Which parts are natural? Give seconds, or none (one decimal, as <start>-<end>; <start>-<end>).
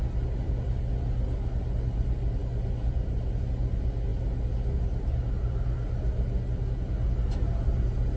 0.0-8.2